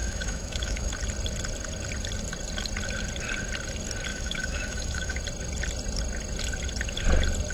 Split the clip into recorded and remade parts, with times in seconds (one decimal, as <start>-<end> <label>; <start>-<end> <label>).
0.0-0.9 remade; 0.9-4.1 recorded; 4.1-5.2 remade; 5.2-7.5 recorded